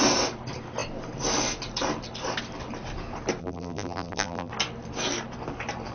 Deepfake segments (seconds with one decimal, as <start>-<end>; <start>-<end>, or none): 3.4-4.5